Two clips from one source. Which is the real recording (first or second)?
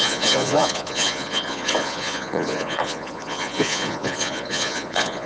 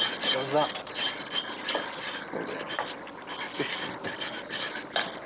second